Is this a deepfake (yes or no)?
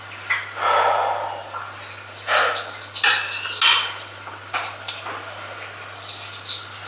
no